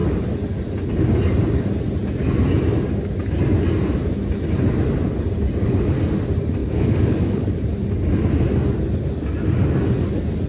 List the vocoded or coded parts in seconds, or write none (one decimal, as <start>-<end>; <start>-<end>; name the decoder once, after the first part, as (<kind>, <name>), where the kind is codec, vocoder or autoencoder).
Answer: 6.6-7.6 (codec, DAC)